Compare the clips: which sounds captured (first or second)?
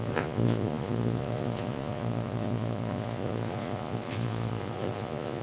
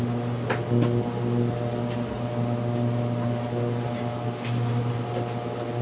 second